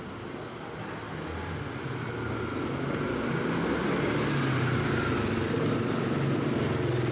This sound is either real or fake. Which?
real